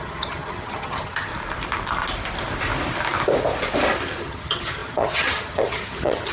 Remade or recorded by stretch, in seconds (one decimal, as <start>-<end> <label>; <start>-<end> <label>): 0.0-1.3 remade; 1.3-4.2 recorded; 4.2-6.3 remade